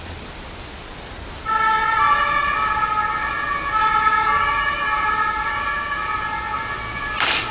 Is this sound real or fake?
real